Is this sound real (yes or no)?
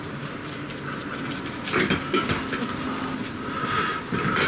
yes